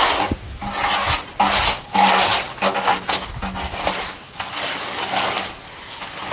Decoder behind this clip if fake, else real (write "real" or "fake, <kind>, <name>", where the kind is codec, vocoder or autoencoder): real